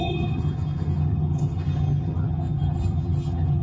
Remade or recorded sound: remade